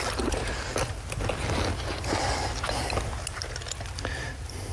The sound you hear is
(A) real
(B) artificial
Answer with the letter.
A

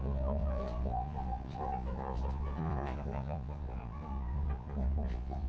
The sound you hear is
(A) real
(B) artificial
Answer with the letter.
B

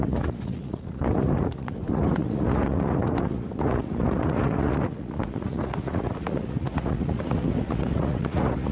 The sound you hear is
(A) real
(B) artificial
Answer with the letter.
B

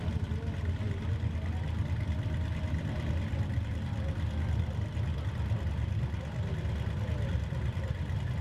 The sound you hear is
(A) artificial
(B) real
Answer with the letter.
B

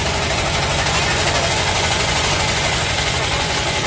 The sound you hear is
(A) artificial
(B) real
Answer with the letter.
A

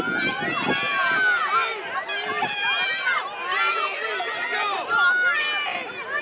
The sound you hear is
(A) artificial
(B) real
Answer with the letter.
B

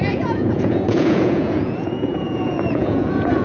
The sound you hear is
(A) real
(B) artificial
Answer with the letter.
B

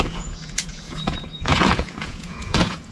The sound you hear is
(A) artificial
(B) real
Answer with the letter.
A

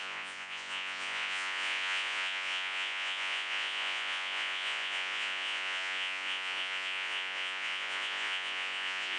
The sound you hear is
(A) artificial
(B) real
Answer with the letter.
A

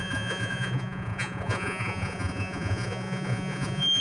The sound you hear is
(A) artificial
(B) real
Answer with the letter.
A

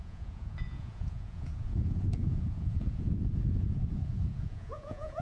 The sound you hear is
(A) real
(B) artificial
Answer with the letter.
B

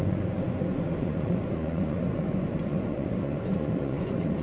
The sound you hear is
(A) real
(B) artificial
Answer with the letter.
B